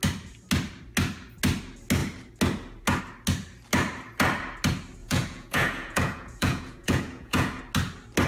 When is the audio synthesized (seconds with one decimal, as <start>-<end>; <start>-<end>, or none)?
5.0-7.6